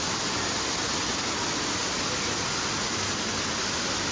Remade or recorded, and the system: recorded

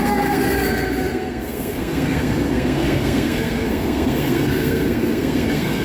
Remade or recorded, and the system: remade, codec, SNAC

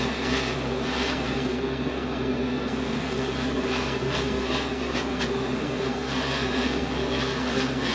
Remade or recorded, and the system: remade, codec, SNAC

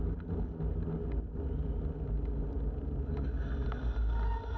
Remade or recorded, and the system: recorded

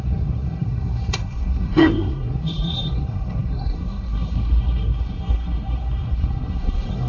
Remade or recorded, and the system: remade, codec, SNAC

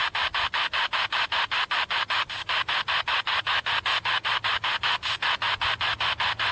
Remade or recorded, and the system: recorded